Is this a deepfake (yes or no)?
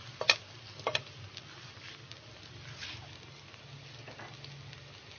no